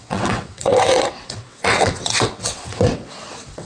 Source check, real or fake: fake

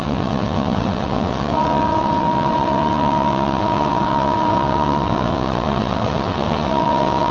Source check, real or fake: fake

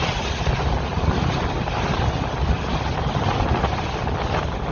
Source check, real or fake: real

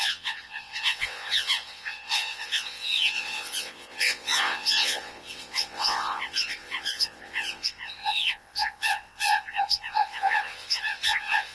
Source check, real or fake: fake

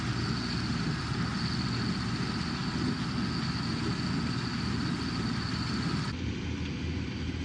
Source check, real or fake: real